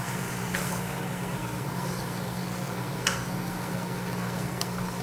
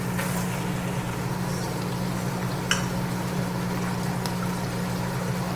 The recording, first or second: second